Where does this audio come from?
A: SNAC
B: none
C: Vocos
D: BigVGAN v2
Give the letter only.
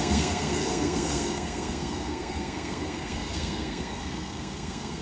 A